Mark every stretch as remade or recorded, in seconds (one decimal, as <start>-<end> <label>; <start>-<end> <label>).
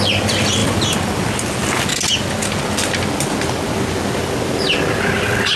0.0-5.6 recorded